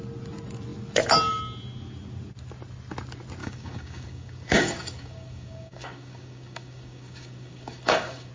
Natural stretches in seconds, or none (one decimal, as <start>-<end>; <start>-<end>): 0.0-3.4